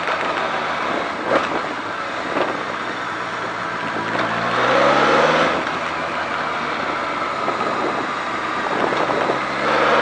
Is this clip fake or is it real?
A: real